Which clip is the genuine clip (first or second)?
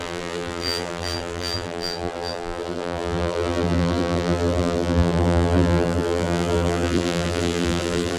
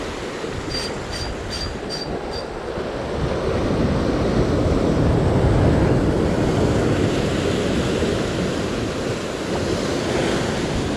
second